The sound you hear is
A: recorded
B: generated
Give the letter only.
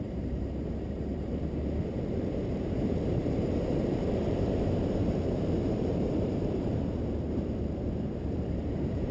B